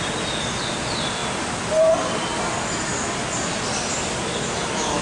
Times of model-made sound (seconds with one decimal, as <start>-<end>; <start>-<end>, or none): none